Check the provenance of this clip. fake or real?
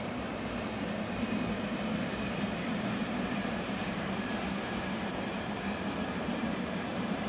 fake